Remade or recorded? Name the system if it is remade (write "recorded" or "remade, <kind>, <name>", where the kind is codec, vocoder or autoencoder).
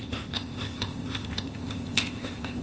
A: remade, codec, ZipCodec